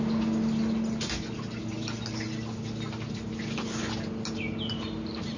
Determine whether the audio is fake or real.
real